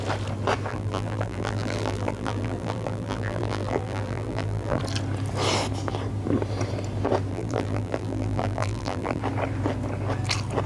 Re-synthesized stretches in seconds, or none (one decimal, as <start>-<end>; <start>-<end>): 0.7-4.8; 7.3-9.2